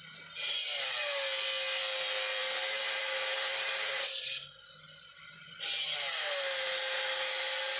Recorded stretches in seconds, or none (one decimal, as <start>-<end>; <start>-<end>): 0.0-7.8